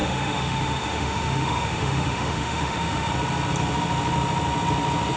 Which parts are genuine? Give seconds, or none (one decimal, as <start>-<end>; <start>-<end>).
3.1-5.2